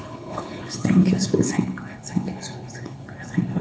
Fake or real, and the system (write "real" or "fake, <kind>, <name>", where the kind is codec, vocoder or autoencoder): fake, codec, HILCodec